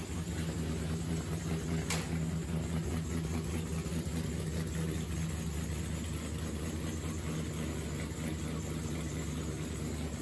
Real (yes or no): yes